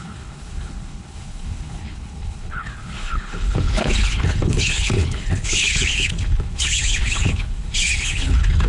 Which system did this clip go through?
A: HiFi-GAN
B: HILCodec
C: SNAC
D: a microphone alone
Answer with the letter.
B